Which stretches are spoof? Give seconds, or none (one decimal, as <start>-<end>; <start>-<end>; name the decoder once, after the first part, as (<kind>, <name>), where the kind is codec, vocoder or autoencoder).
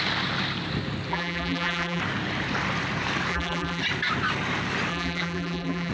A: 1.1-2.0 (vocoder, BigVGAN v2); 3.3-3.8; 4.9-5.9